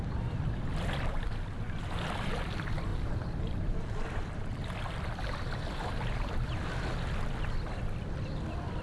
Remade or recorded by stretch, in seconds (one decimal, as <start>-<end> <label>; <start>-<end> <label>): 0.0-2.9 recorded; 2.9-4.5 remade; 4.5-8.8 recorded